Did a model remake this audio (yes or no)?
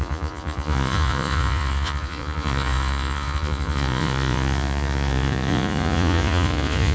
yes